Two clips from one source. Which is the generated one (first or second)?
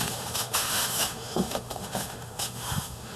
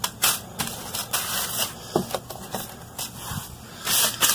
first